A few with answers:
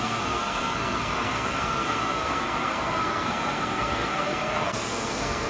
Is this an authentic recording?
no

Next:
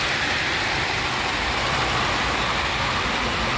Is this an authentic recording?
yes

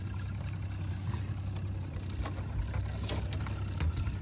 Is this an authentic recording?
yes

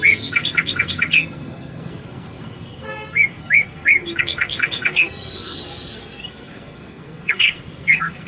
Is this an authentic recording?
no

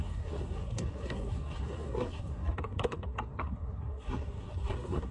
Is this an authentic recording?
no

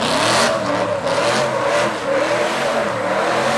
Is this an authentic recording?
yes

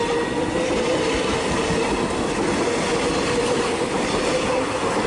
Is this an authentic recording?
yes